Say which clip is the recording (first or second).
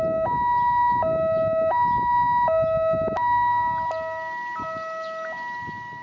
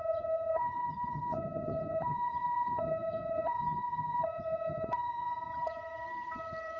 first